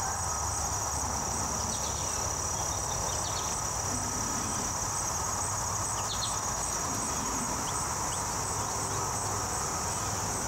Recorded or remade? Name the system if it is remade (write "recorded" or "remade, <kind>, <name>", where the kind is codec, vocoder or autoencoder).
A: recorded